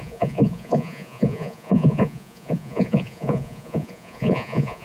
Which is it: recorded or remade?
remade